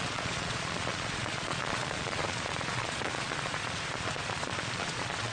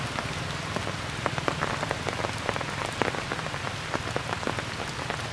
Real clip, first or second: second